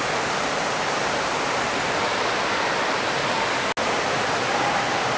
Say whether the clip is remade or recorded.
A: recorded